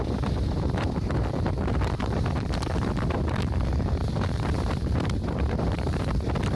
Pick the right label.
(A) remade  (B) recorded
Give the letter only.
A